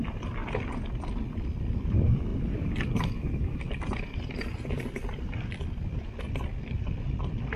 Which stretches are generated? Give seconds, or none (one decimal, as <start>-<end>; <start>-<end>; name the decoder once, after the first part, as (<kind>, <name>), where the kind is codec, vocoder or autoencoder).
0.0-0.4 (vocoder, BigVGAN v2); 0.9-7.6